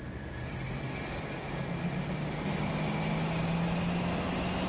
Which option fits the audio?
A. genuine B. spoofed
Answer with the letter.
A